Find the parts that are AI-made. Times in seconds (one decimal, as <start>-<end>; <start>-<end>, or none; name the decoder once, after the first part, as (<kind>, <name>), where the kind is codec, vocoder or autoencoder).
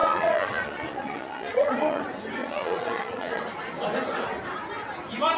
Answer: 0.0-2.0 (vocoder, Vocos); 2.4-3.4